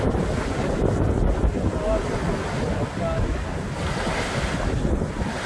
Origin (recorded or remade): recorded